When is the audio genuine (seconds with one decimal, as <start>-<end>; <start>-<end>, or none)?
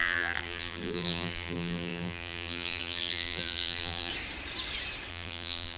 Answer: 4.1-5.1